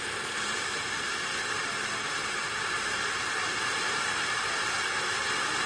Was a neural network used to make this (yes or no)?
no